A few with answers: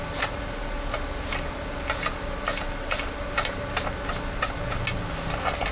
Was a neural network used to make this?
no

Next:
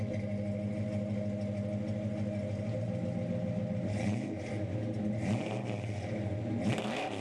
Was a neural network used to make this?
no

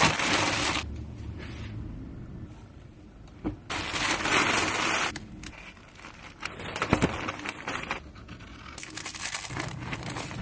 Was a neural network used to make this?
no